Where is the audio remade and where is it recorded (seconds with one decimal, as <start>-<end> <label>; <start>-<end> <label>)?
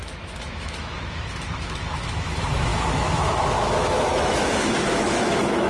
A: 0.0-5.7 remade